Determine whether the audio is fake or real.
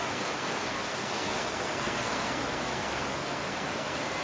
fake